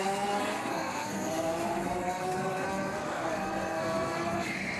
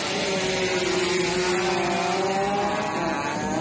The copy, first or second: first